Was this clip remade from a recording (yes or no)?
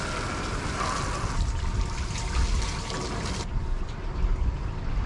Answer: no